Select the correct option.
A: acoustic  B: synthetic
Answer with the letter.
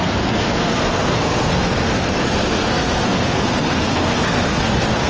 B